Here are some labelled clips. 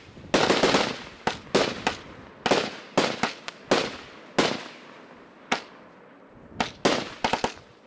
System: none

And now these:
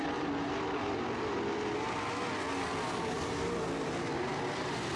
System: none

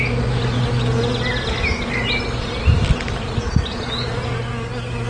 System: none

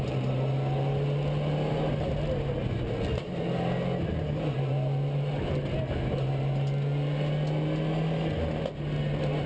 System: none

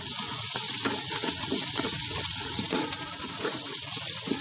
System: vocoder, Vocos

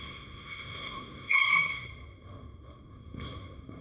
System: codec, SNAC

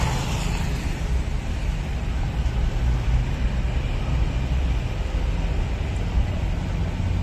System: none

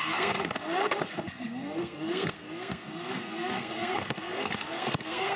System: codec, SNAC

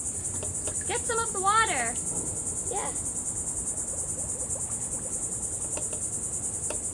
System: none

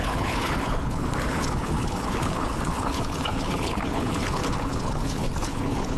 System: codec, HILCodec